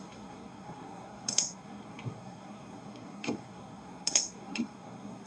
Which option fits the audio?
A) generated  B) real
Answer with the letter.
A